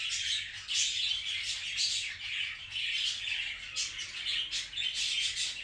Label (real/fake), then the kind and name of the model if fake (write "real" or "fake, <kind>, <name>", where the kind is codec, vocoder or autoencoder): real